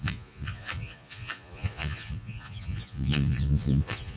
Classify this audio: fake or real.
fake